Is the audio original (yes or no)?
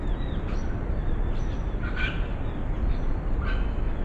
yes